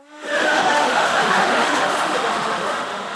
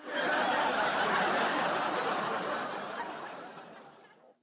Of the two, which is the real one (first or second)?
second